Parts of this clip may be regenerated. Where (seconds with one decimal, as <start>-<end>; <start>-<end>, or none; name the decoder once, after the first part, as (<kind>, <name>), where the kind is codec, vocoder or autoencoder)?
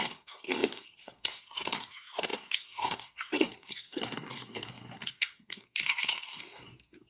0.0-7.1 (codec, SNAC)